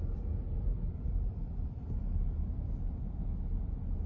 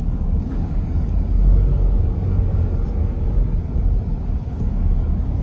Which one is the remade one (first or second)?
second